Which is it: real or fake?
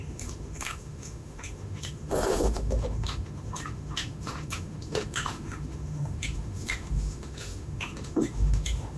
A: fake